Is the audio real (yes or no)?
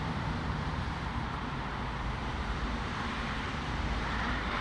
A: no